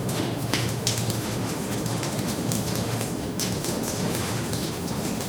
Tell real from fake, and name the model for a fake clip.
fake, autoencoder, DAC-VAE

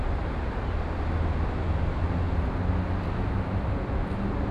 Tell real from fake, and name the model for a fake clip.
real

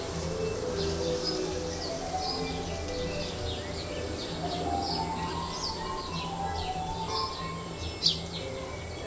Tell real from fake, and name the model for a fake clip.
real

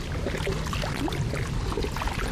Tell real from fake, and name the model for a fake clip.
real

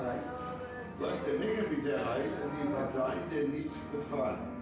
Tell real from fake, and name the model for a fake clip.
real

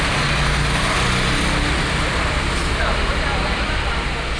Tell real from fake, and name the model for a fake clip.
real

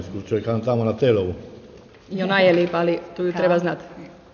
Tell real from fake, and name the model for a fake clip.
real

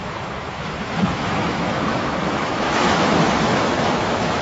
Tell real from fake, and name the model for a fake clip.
fake, autoencoder, DAC-VAE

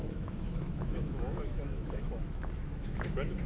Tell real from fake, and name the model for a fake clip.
fake, autoencoder, DAC-VAE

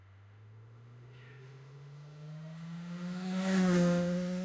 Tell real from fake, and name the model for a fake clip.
fake, autoencoder, DAC-VAE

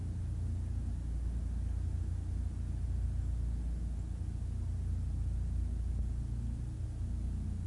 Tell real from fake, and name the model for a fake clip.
real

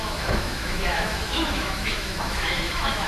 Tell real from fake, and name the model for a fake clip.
fake, autoencoder, DAC-VAE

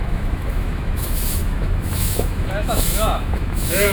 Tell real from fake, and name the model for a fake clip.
fake, autoencoder, DAC-VAE